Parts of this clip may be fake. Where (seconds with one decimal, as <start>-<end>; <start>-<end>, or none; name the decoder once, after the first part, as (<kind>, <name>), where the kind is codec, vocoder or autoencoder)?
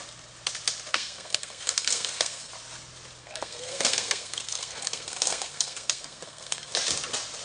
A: 0.9-2.5 (codec, SNAC); 3.2-6.7